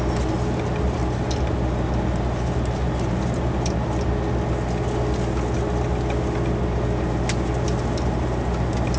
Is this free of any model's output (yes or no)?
yes